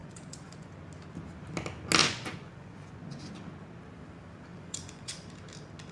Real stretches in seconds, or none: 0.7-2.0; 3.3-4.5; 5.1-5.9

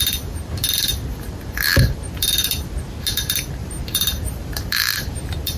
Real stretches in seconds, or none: 0.0-3.6